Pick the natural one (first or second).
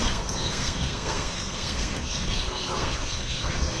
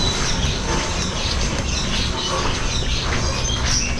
second